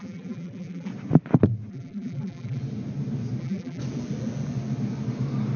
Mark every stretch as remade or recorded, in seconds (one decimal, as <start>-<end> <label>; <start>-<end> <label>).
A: 0.0-0.9 remade; 0.9-1.7 recorded; 1.7-2.6 remade; 2.6-3.4 recorded; 3.4-3.8 remade; 3.8-5.6 recorded